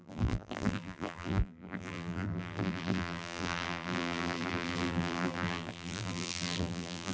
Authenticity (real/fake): fake